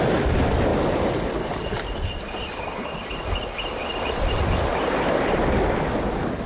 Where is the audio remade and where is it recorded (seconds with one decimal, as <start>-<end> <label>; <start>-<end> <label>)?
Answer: 0.0-6.5 recorded